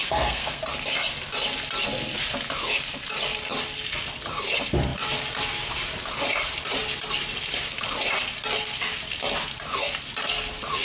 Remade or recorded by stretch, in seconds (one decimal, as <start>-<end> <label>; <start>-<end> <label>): 0.0-0.6 remade; 0.6-10.8 recorded